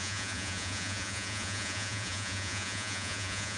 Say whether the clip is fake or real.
fake